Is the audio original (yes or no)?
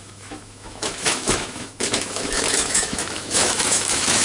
no